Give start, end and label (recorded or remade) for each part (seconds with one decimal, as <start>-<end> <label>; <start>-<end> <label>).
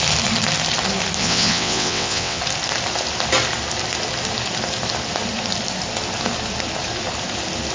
0.0-1.2 recorded; 1.2-2.4 remade; 2.4-7.7 recorded